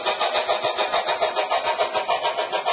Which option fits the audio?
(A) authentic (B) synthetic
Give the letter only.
A